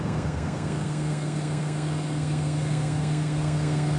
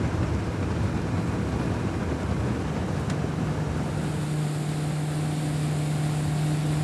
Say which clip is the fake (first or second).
first